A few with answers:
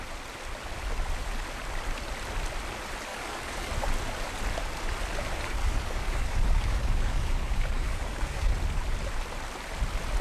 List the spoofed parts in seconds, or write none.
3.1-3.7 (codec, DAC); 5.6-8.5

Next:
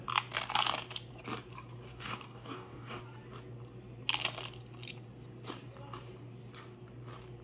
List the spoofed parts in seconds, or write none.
1.9-3.0 (codec, DAC)

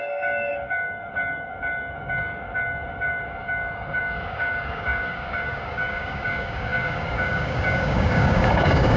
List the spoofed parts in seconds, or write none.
0.0-9.0 (codec, DAC)

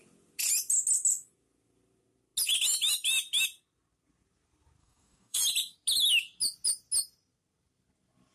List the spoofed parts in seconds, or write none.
4.8-5.4 (codec, DAC)

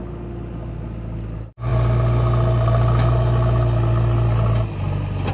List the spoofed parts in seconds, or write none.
none

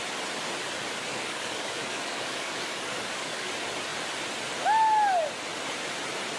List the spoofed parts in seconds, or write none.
1.1-3.5 (codec, DAC)

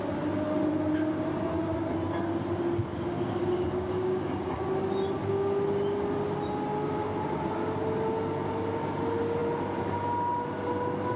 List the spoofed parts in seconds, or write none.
2.8-4.6 (codec, DAC)